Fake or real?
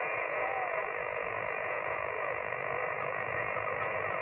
fake